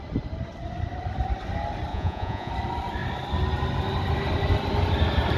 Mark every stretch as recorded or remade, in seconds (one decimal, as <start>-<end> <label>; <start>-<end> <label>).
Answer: 0.0-1.9 recorded; 1.9-2.5 remade; 2.5-5.4 recorded

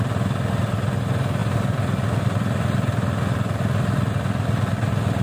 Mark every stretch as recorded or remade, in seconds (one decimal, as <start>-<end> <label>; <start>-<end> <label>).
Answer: 0.0-5.2 recorded

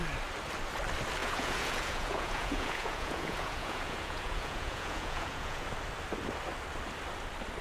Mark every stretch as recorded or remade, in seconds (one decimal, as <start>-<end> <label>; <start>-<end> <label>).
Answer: 0.0-1.2 recorded; 1.2-5.7 remade; 5.7-7.6 recorded